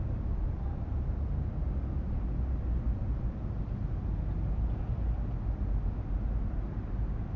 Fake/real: real